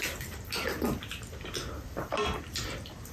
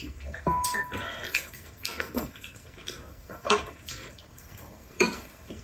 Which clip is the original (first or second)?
first